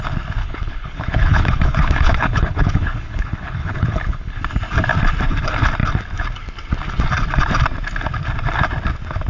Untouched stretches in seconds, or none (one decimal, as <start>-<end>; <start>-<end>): 0.0-0.4; 4.4-9.3